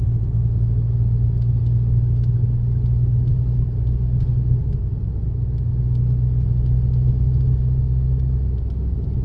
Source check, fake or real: real